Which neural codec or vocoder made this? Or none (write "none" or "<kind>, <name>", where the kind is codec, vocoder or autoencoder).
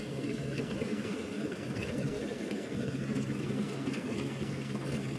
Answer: codec, SNAC